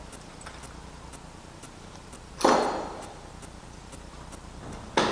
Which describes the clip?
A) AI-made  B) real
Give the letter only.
B